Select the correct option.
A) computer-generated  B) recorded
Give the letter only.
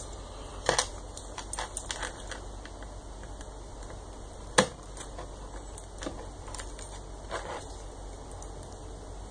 B